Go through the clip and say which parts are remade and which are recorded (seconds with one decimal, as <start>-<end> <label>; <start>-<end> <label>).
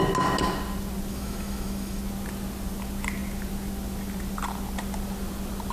0.0-1.1 recorded; 1.1-2.0 remade; 2.0-5.7 recorded